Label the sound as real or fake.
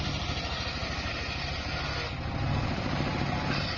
real